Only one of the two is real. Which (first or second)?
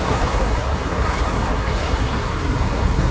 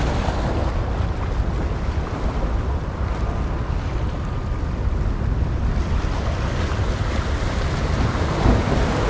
second